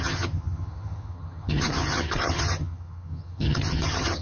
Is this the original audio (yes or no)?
no